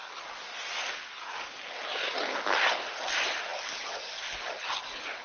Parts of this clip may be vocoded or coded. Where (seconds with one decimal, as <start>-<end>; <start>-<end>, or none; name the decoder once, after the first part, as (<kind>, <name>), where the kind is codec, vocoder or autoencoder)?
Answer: none